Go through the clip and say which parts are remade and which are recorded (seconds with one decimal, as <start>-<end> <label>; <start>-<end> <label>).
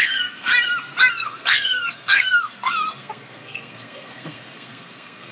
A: 0.0-0.5 remade; 0.5-1.1 recorded; 1.1-5.3 remade